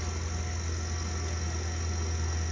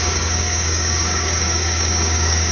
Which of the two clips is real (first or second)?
first